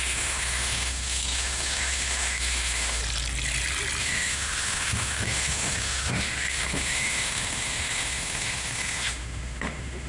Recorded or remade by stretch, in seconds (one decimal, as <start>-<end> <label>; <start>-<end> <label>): 0.0-3.0 remade; 3.0-4.0 recorded; 4.0-10.1 remade